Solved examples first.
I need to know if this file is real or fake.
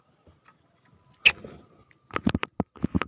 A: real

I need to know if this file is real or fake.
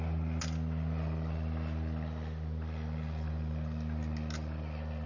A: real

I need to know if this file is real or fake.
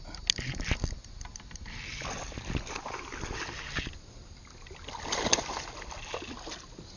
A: real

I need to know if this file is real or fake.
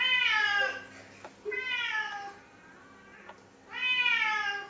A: real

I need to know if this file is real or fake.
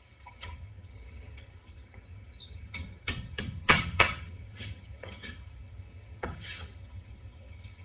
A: fake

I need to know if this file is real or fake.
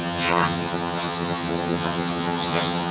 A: fake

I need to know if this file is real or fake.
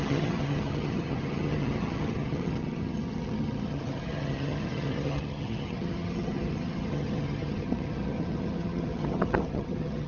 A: fake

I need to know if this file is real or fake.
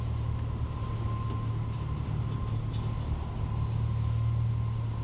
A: real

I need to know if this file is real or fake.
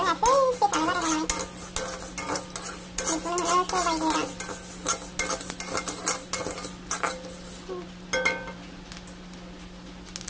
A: real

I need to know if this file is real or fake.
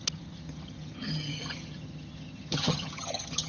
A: fake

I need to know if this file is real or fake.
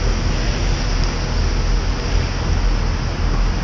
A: real